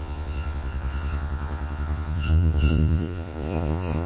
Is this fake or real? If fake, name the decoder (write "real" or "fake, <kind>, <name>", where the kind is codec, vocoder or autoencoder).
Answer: fake, vocoder, Vocos